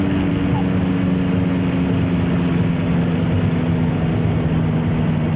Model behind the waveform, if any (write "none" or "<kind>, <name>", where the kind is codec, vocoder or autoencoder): none